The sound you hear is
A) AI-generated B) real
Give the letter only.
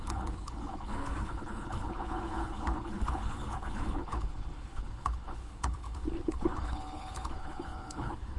A